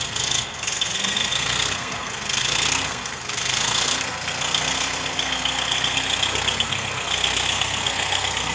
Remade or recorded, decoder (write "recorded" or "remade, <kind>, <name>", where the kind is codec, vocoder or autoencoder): remade, codec, SNAC